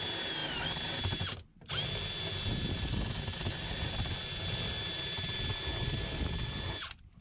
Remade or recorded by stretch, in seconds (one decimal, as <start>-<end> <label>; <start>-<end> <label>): 0.0-7.2 recorded